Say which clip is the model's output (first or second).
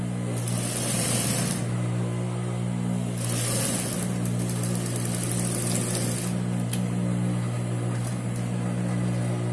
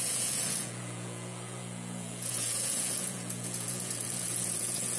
second